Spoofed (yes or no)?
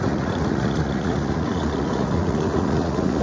yes